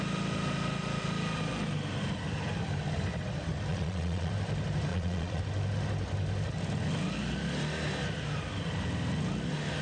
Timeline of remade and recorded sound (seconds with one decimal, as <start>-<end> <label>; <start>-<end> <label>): 0.0-3.7 recorded; 3.7-4.3 remade; 4.3-4.9 recorded; 4.9-5.4 remade; 5.4-9.8 recorded